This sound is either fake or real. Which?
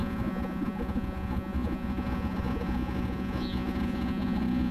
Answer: fake